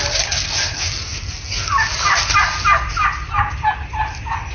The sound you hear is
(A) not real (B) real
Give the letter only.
B